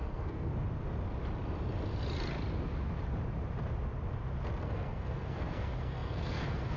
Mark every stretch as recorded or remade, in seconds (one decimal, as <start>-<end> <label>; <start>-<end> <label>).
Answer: 0.0-0.5 remade; 0.5-4.6 recorded; 4.6-6.8 remade